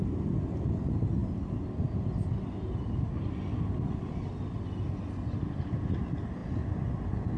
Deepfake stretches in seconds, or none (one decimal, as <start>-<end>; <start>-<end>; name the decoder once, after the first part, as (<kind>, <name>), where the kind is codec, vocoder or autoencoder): none